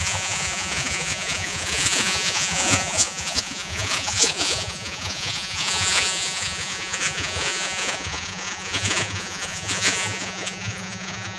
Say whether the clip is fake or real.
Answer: fake